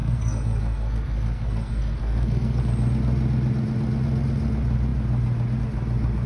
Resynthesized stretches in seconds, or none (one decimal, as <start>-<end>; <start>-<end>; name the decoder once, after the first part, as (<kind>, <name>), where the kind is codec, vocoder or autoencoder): 0.0-2.6 (codec, SNAC)